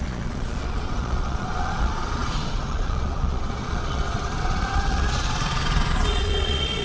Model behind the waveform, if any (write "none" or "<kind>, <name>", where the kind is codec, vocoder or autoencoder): vocoder, Vocos